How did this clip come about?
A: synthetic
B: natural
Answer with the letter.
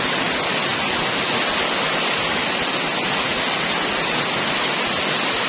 B